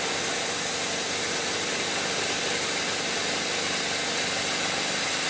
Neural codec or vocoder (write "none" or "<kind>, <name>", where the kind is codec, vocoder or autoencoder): none